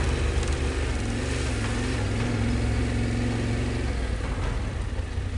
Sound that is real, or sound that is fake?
real